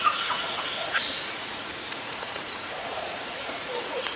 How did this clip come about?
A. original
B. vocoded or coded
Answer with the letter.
B